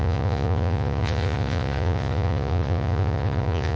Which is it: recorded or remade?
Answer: remade